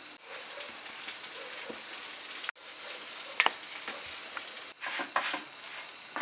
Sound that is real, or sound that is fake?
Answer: real